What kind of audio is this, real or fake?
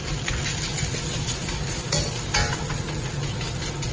real